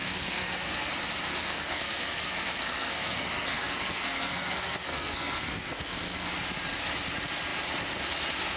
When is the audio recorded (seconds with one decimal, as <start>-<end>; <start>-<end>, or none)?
0.9-1.3; 6.3-8.6